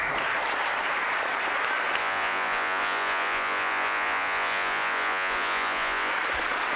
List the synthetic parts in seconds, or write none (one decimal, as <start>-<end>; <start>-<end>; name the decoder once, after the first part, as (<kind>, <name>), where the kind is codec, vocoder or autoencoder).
2.0-6.1 (vocoder, Vocos)